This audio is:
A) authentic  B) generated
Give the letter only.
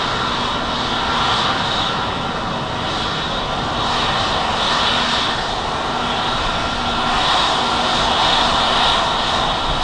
A